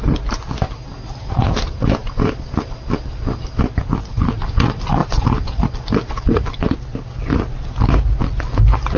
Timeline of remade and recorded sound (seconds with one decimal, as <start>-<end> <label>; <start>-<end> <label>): 0.0-5.0 recorded; 5.0-5.7 remade; 5.7-9.0 recorded